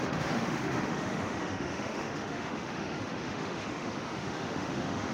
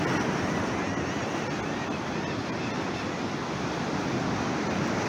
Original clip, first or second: second